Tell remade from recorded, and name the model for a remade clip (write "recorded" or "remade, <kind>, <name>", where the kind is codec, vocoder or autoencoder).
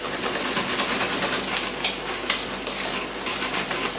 recorded